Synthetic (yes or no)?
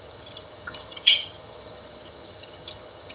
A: yes